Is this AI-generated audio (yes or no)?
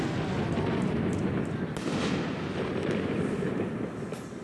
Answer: no